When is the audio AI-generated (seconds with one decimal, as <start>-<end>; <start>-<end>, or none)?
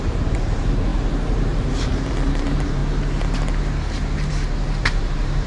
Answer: 0.0-2.8; 4.3-5.5